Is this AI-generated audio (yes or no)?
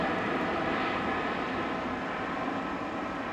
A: no